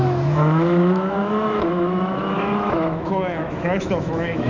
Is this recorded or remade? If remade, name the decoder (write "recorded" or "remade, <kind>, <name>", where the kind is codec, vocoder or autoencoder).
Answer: remade, autoencoder, DAC-VAE